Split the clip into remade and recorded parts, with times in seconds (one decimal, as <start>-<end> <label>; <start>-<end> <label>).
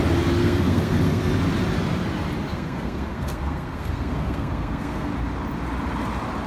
0.0-0.4 recorded; 0.4-1.3 remade; 1.3-2.5 recorded; 2.5-5.1 remade; 5.1-6.5 recorded